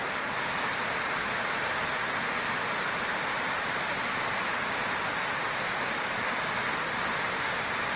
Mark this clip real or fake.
real